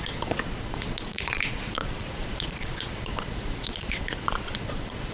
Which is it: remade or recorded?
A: remade